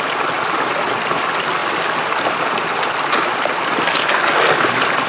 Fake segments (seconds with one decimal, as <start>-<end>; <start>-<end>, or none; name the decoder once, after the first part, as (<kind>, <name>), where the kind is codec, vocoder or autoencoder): none